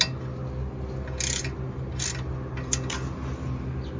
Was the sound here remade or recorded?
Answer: recorded